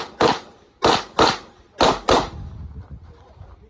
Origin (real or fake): real